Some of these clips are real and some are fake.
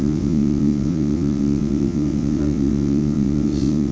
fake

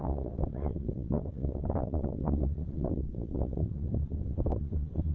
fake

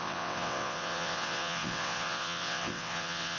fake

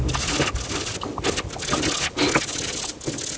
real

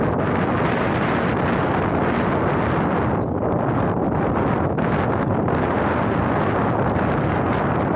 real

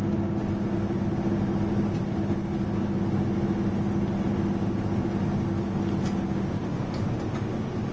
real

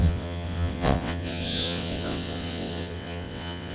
fake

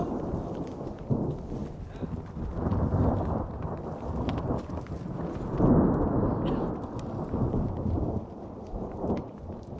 real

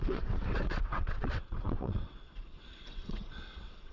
fake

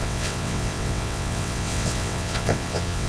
fake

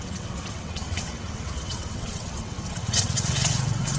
fake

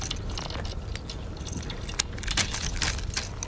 real